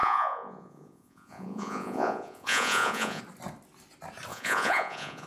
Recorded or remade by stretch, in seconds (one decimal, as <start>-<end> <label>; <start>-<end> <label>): 0.0-3.2 remade; 3.2-4.3 recorded; 4.3-5.3 remade

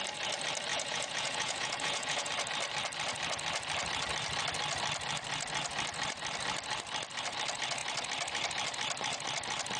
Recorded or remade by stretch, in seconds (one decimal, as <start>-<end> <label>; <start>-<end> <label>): 0.0-0.7 recorded; 0.7-2.3 remade; 2.3-9.8 recorded